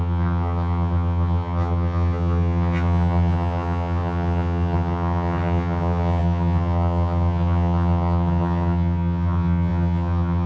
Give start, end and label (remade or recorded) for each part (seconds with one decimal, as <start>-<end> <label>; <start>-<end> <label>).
0.0-10.5 remade